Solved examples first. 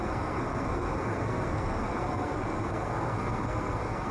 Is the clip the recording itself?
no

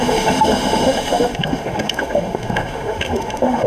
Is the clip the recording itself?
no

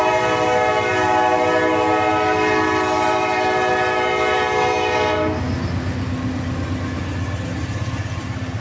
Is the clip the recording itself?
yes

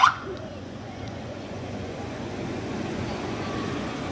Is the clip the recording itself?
no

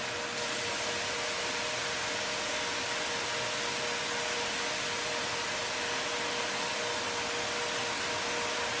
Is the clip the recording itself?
yes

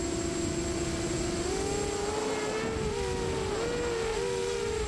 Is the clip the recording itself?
yes